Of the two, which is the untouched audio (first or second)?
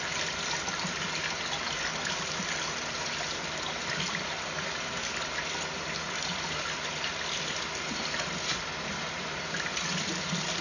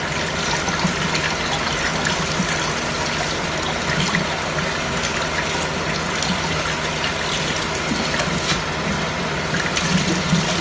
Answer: second